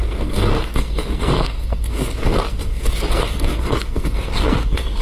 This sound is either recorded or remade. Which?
remade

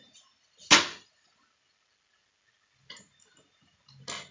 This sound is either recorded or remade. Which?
recorded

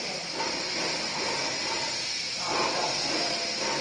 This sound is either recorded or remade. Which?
recorded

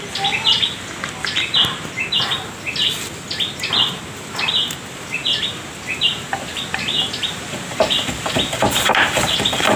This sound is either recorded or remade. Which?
recorded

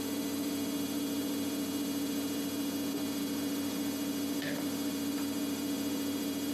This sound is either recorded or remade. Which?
recorded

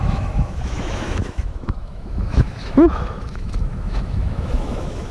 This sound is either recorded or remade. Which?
remade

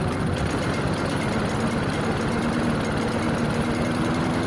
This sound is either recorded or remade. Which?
recorded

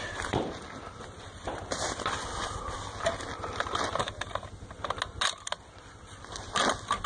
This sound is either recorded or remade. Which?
recorded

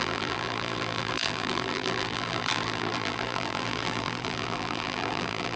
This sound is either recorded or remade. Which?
remade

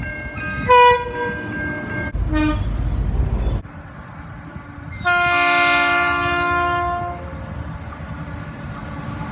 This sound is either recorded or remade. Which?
recorded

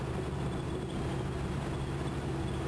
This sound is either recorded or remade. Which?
recorded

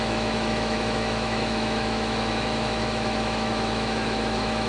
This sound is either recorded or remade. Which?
remade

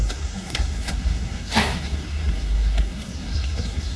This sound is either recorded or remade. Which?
remade